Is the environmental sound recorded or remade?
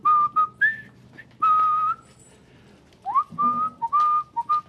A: recorded